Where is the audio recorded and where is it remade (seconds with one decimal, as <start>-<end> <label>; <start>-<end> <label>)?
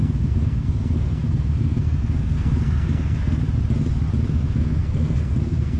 0.0-3.4 remade; 3.4-4.3 recorded; 4.3-5.8 remade